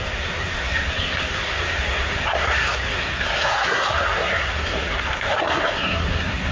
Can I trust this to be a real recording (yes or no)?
no